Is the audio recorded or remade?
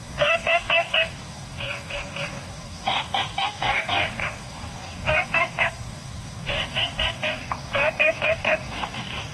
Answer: remade